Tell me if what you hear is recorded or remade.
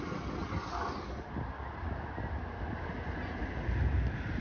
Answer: recorded